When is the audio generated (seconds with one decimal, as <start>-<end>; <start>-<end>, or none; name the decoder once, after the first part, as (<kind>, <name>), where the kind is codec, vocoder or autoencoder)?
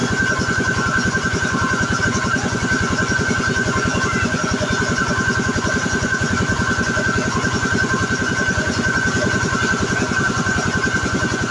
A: 0.0-11.5 (vocoder, Vocos)